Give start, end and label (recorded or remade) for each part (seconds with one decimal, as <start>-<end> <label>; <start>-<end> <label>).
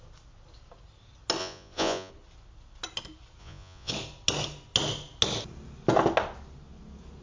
0.0-1.4 recorded; 1.4-2.1 remade; 2.1-3.4 recorded; 3.4-3.9 remade; 3.9-7.2 recorded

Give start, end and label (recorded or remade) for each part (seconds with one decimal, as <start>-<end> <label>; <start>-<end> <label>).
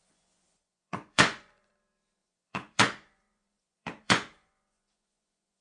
0.0-1.7 remade; 1.7-2.2 recorded; 2.2-5.6 remade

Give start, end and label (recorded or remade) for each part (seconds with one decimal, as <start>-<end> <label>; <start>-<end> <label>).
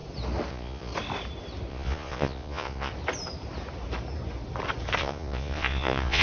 0.0-0.5 recorded; 0.5-0.9 remade; 0.9-1.7 recorded; 1.7-2.9 remade; 2.9-5.0 recorded; 5.0-6.2 remade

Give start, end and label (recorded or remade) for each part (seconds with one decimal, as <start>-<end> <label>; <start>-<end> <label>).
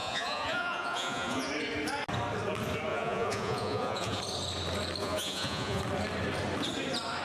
0.0-1.5 remade; 1.5-2.9 recorded; 2.9-4.2 remade; 4.2-5.0 recorded; 5.0-5.8 remade; 5.8-7.2 recorded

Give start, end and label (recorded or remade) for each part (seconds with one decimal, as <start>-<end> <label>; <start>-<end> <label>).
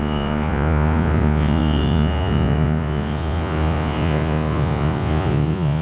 0.0-5.8 remade